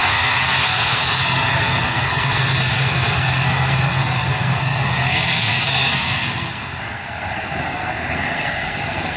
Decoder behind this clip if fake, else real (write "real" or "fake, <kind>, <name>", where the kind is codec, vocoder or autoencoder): fake, codec, SNAC